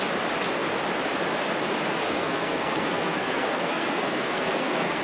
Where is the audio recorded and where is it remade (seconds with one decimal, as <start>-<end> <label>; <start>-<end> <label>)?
0.0-2.0 recorded; 2.0-5.0 remade